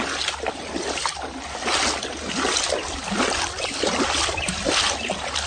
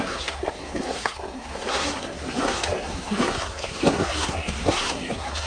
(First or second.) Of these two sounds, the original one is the first